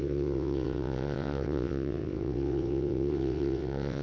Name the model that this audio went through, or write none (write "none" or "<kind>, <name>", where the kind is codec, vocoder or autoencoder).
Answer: vocoder, WaveNeXt